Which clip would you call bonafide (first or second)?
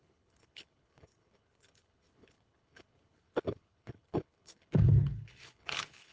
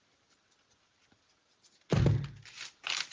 second